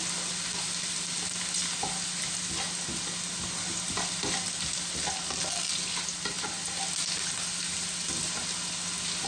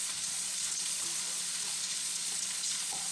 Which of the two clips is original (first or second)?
first